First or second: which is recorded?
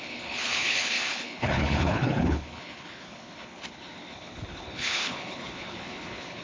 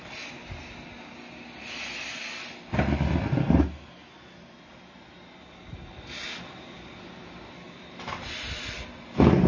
second